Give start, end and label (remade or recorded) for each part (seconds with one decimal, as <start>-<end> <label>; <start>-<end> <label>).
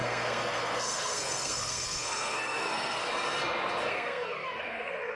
0.0-3.0 remade; 3.0-3.9 recorded; 3.9-5.1 remade